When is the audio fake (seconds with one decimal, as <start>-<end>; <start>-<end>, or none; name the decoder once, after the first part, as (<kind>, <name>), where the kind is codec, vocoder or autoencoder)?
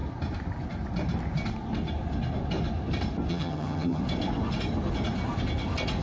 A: 3.3-4.0 (vocoder, HiFi-GAN)